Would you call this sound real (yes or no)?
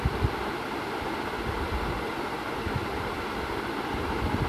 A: yes